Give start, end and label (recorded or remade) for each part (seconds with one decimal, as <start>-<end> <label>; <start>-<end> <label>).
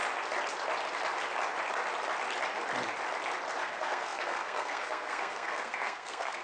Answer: 0.0-3.6 recorded; 3.6-6.4 remade